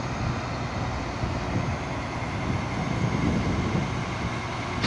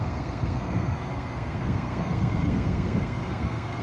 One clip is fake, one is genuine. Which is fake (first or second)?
second